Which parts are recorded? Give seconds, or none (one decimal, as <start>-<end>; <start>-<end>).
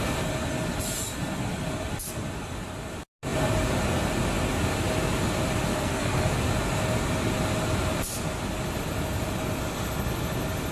0.0-5.7; 6.3-10.7